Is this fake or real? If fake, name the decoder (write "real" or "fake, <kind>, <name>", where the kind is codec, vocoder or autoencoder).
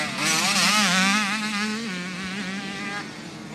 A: real